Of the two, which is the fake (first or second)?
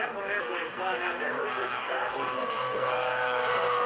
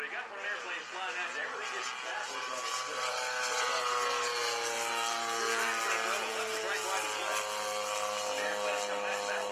first